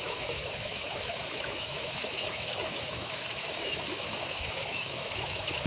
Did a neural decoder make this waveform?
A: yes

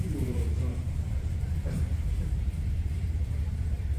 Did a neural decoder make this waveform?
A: yes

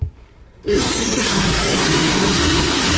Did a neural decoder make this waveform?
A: yes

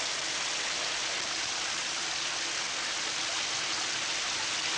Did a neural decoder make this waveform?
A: no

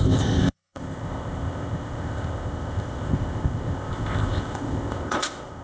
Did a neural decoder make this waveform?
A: yes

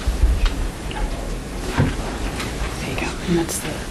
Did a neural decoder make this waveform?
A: yes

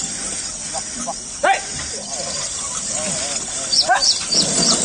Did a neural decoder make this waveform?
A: no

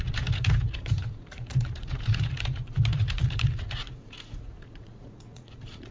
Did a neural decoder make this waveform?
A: yes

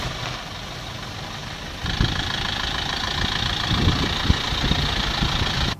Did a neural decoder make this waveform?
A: no